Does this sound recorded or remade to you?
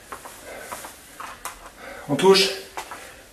recorded